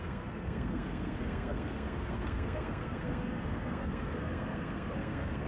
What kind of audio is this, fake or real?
fake